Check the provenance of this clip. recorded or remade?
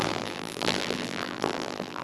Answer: remade